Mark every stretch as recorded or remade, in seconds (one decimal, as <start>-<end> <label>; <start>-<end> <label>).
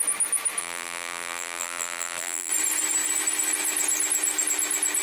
0.0-0.6 recorded; 0.6-2.5 remade; 2.5-5.0 recorded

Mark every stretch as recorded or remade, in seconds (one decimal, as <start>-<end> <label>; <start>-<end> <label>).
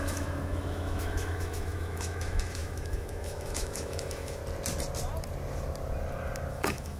0.0-4.4 remade; 4.4-6.5 recorded; 6.5-7.0 remade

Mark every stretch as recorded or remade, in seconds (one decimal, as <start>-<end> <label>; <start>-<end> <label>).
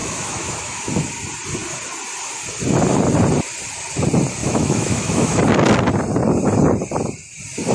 0.0-0.9 remade; 0.9-4.4 recorded; 4.4-5.4 remade; 5.4-7.7 recorded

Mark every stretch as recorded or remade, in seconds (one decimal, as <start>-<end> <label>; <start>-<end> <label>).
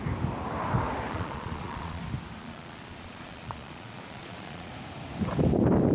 0.0-1.1 recorded; 1.1-2.0 remade; 2.0-2.4 recorded; 2.4-4.7 remade; 4.7-5.9 recorded